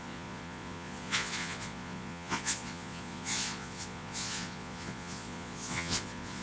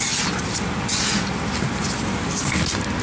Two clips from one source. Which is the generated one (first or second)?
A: first